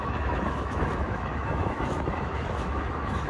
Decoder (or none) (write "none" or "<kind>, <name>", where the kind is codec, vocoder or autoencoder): autoencoder, DAC-VAE